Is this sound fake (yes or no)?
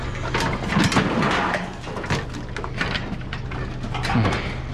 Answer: no